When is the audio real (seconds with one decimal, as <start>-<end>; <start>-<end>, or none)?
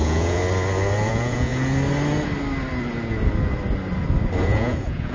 0.4-1.1; 1.5-4.4